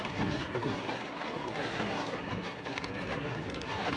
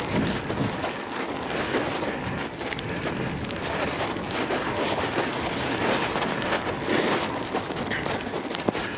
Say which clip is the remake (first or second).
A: first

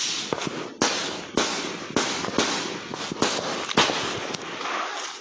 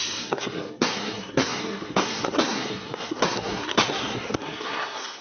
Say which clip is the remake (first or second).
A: second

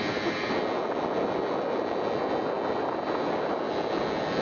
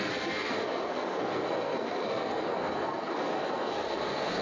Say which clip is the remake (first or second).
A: second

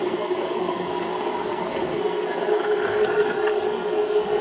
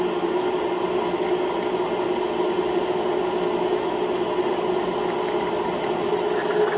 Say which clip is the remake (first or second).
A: first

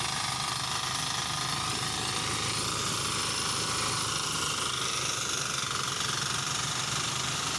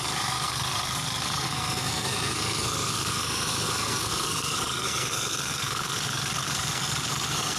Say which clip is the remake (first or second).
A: second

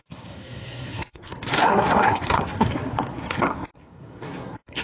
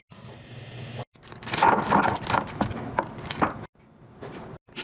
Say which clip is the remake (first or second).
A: first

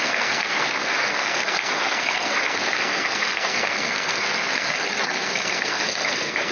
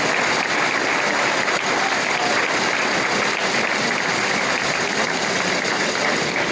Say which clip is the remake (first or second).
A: first